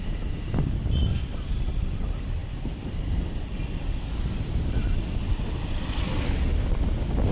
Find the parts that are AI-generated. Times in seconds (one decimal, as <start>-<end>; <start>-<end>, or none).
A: none